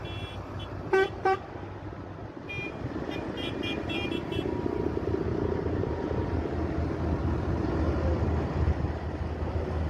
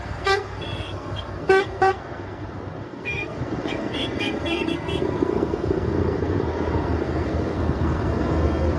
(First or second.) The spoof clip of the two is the second